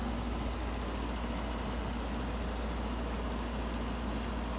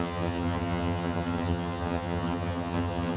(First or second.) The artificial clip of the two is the second